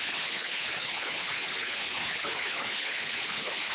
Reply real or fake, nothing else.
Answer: fake